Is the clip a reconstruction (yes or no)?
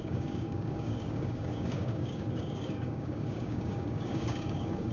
yes